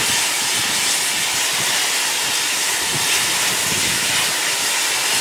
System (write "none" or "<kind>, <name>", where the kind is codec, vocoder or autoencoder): none